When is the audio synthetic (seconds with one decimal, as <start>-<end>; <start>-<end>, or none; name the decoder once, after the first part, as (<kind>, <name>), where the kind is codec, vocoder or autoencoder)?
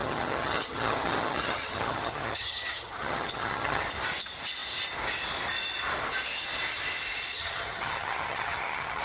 0.0-3.8 (vocoder, HiFi-GAN); 7.3-9.0